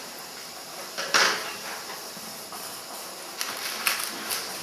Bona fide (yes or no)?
yes